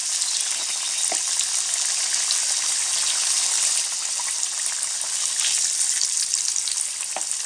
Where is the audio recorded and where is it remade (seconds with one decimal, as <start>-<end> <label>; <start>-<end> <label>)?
0.0-7.5 recorded